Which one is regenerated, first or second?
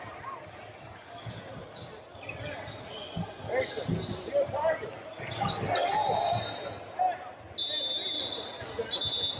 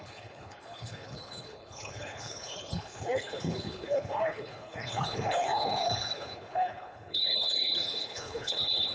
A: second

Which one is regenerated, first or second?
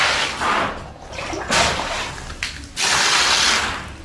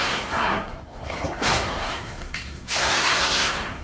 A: second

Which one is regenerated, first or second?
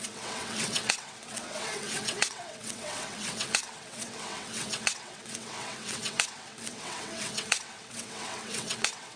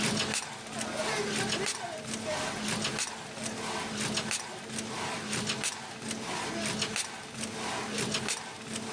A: first